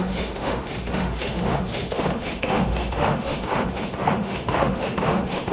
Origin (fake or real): fake